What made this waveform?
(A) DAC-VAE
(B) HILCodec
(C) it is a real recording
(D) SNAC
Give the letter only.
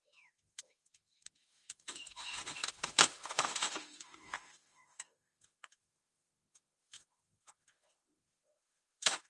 A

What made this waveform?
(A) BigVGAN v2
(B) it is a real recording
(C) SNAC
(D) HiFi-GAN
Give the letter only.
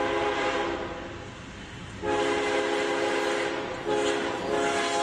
B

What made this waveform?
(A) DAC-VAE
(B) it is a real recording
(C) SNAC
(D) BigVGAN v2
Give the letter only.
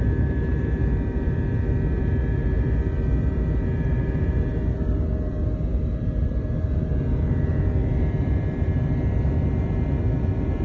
D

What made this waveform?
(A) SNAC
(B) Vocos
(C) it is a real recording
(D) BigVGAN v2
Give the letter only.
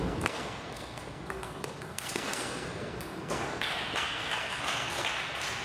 A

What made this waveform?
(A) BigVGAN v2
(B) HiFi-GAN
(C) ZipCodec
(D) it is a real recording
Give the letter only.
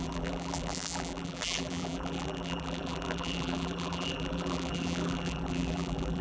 A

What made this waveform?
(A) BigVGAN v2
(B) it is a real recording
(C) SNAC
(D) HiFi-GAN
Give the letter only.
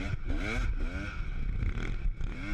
B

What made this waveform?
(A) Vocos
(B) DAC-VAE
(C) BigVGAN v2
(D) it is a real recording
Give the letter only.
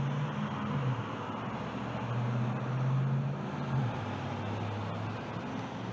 D